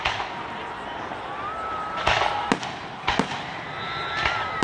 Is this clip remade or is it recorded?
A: recorded